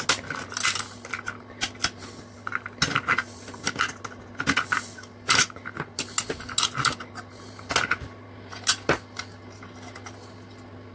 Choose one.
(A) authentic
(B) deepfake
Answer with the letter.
A